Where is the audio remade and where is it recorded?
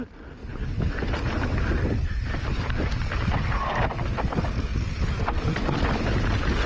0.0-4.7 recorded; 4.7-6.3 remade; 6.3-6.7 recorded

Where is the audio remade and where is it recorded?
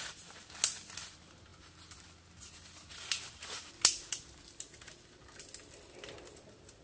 0.0-6.8 recorded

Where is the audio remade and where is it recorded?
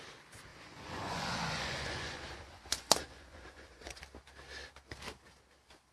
0.0-0.5 recorded; 0.5-4.0 remade; 4.0-5.9 recorded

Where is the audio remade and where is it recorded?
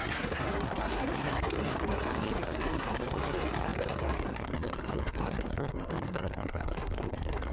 0.0-7.5 remade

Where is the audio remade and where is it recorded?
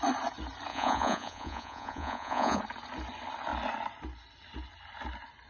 0.0-0.7 recorded; 0.7-2.6 remade; 2.6-5.5 recorded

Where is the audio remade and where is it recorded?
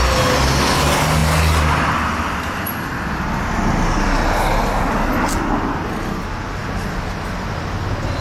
0.0-8.2 recorded